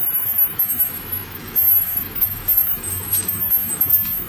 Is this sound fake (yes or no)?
yes